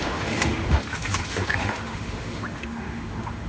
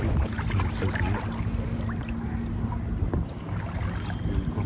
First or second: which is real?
second